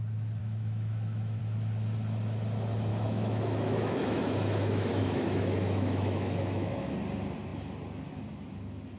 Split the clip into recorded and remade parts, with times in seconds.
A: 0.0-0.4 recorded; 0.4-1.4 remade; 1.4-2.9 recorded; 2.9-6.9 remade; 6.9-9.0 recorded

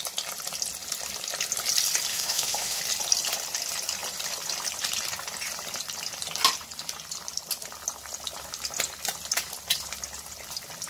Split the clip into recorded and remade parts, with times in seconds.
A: 0.0-2.1 recorded; 2.1-2.8 remade; 2.8-10.9 recorded

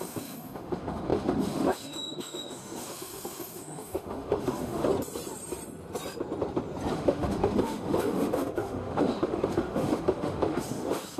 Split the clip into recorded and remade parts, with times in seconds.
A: 0.0-4.9 remade; 4.9-6.9 recorded; 6.9-11.2 remade

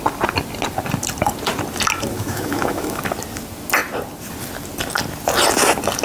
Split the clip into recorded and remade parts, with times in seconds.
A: 0.0-2.1 recorded; 2.1-3.0 remade; 3.0-6.0 recorded

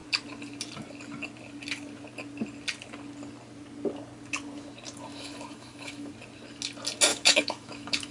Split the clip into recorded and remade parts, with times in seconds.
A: 0.0-5.1 recorded; 5.1-6.1 remade; 6.1-7.1 recorded; 7.1-8.1 remade

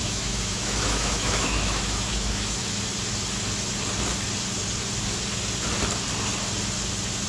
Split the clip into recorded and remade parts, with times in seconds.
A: 0.0-2.7 remade; 2.7-7.3 recorded

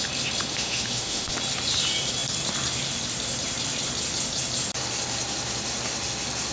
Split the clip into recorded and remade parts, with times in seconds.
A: 0.0-0.5 recorded; 0.5-1.3 remade; 1.3-6.5 recorded

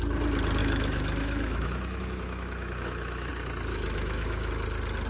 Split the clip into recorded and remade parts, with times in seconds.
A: 0.0-0.6 recorded; 0.6-3.3 remade; 3.3-3.7 recorded; 3.7-4.5 remade; 4.5-5.1 recorded